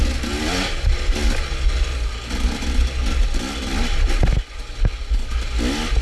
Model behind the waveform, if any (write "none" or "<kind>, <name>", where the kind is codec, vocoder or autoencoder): none